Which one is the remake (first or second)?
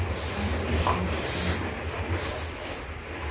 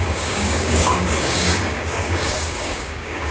second